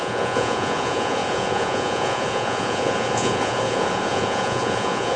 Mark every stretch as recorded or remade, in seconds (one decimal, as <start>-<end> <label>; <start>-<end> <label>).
0.0-5.2 remade